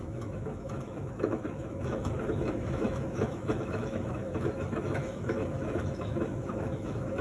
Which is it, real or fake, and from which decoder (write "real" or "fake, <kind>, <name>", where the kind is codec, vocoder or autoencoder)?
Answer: fake, autoencoder, DAC-VAE